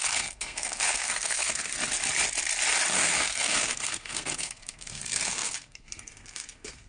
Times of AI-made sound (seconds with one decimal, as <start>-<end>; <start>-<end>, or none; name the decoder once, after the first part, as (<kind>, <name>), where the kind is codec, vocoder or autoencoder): 0.0-1.7 (codec, SNAC); 2.9-6.9